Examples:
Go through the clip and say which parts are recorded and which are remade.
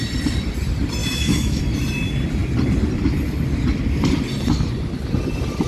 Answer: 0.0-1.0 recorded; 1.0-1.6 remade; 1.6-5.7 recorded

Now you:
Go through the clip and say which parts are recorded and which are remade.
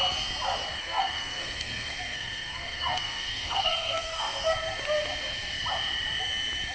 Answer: 0.0-0.8 recorded; 0.8-4.4 remade; 4.4-6.7 recorded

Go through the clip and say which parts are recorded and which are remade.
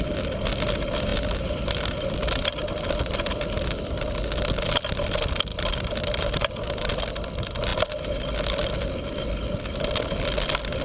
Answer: 0.0-10.8 recorded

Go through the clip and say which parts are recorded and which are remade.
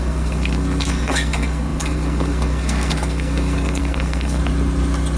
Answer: 0.0-4.4 remade; 4.4-5.2 recorded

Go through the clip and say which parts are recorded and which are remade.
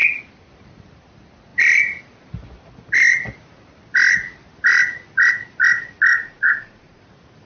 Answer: 0.0-6.1 recorded; 6.1-7.0 remade; 7.0-7.5 recorded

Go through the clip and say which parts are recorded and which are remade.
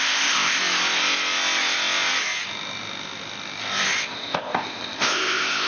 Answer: 0.0-0.6 remade; 0.6-4.0 recorded; 4.0-5.7 remade